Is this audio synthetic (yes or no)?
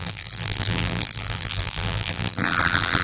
yes